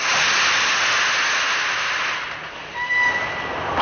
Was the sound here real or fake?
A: real